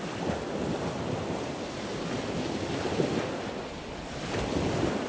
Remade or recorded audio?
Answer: recorded